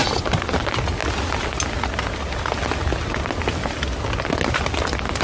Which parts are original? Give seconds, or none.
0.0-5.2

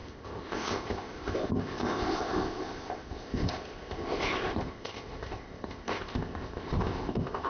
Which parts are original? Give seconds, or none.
none

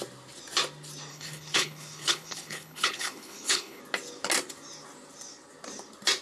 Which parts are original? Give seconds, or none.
0.0-1.1; 3.8-6.2

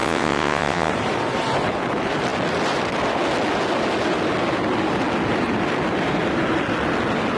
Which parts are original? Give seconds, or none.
0.9-7.4

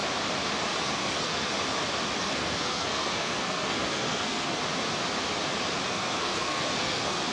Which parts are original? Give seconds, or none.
0.0-0.8; 1.5-2.2; 4.6-5.9